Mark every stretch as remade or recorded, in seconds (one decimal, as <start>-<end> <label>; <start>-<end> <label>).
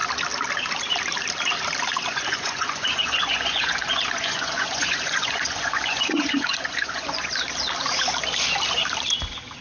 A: 0.0-2.1 recorded; 2.1-7.3 remade; 7.3-9.6 recorded